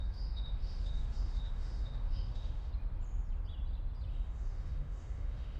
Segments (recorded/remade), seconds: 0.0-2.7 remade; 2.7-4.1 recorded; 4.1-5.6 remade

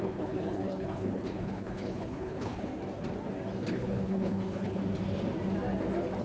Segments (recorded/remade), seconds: 0.0-2.7 remade; 2.7-3.7 recorded; 3.7-4.8 remade; 4.8-6.2 recorded